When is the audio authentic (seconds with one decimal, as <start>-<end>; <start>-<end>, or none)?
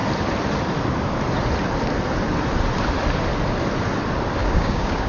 0.0-4.4